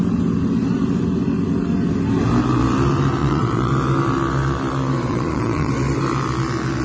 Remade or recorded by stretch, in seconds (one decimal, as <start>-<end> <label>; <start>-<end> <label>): 0.0-3.2 recorded; 3.2-3.7 remade; 3.7-5.1 recorded; 5.1-5.7 remade; 5.7-6.8 recorded